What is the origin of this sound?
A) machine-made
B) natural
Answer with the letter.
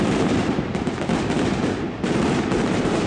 A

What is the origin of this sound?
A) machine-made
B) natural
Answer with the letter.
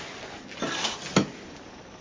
B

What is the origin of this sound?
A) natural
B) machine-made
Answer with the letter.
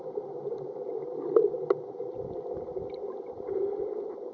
A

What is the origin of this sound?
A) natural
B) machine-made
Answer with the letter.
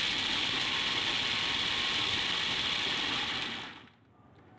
A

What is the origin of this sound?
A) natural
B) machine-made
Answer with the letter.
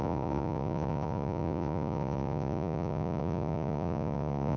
B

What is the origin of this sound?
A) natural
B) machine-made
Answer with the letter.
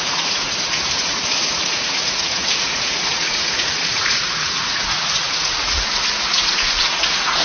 B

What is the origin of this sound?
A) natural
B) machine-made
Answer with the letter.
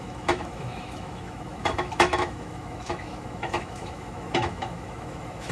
B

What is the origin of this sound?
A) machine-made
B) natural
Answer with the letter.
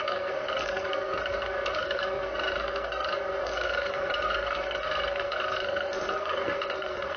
A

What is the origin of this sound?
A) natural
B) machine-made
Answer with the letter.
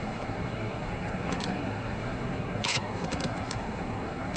B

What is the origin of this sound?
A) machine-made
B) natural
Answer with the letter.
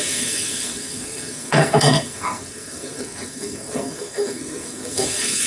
A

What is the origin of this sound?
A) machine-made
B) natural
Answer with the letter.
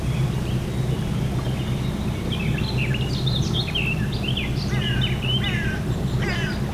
B